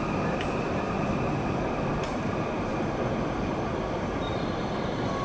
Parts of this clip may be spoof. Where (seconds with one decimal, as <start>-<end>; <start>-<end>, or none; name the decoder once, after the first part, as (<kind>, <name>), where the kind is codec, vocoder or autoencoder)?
none